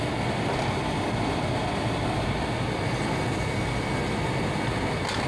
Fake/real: real